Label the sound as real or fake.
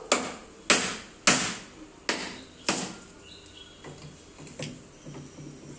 real